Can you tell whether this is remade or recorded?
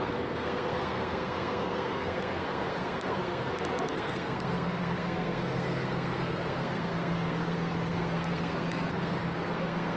remade